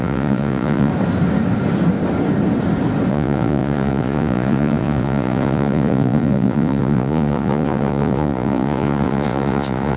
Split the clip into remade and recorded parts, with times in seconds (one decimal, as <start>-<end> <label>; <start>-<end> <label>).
0.0-0.9 remade; 0.9-3.1 recorded; 3.1-10.0 remade